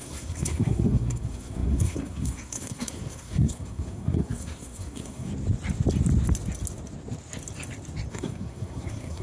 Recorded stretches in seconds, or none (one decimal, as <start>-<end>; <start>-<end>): 5.3-8.1